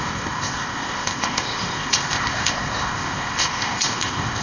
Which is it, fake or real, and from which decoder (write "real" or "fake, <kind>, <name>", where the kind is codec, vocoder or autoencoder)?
fake, codec, ZipCodec